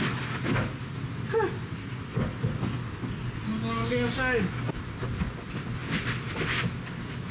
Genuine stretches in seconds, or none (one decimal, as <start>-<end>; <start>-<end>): 0.0-7.3